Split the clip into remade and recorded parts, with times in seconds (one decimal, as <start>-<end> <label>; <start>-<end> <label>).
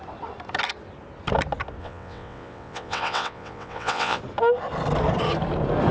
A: 0.0-1.8 recorded; 1.8-4.2 remade; 4.2-5.9 recorded